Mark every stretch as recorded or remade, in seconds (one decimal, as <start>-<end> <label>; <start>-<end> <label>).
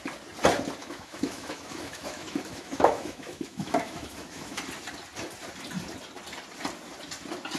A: 0.0-0.8 recorded; 0.8-4.6 remade; 4.6-7.6 recorded